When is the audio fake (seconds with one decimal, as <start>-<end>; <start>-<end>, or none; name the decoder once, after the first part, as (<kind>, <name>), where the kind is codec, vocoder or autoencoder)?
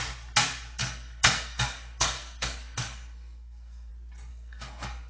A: 0.8-3.9 (codec, SNAC); 4.3-5.1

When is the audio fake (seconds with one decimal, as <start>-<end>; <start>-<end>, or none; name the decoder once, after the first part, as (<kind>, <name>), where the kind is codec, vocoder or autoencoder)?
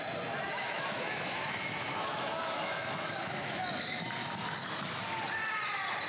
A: 0.5-3.6 (autoencoder, DAC-VAE)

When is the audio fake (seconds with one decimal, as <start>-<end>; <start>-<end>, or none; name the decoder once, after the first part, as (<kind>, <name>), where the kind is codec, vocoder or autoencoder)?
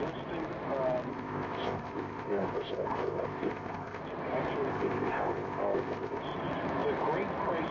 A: 1.1-4.0 (codec, ZipCodec); 4.7-6.2